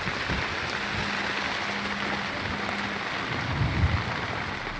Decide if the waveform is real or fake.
real